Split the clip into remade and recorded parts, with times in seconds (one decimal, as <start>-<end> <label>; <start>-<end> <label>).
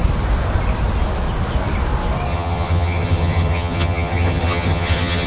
0.0-2.3 recorded; 2.3-5.3 remade